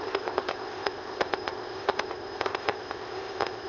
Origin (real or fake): fake